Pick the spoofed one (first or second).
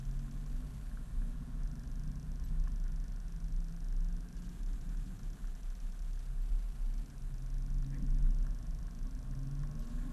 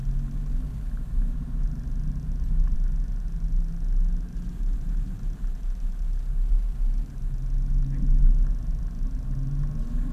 second